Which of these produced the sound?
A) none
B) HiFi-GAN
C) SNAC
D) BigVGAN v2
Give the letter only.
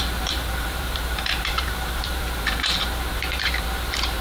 D